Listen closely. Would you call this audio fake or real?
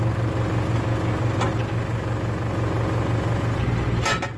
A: real